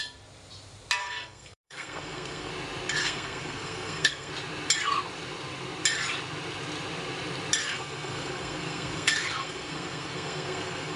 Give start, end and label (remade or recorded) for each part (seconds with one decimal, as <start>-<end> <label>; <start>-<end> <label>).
0.0-1.0 recorded; 1.0-2.5 remade; 2.5-3.0 recorded; 3.0-4.3 remade; 4.3-7.6 recorded; 7.6-11.0 remade